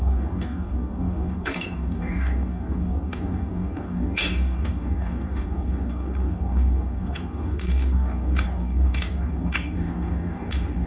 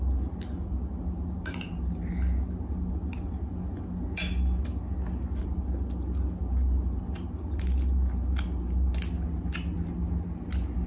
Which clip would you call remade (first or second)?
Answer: first